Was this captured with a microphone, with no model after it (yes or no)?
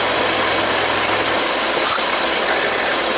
yes